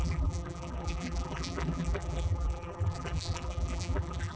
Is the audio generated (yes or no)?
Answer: yes